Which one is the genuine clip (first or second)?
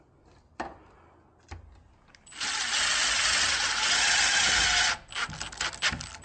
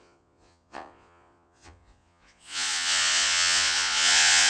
first